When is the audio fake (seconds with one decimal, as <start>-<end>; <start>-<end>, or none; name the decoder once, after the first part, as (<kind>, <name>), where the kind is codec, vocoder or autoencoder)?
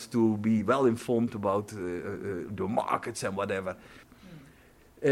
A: 0.0-0.6 (codec, DAC)